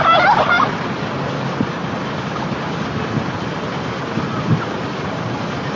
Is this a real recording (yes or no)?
yes